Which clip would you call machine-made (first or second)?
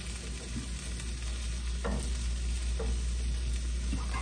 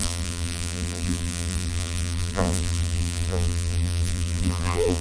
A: second